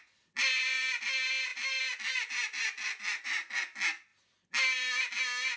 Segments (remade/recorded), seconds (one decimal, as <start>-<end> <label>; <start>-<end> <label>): 0.0-5.6 recorded